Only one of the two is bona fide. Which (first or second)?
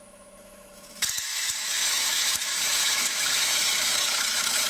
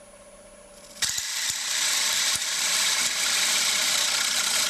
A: second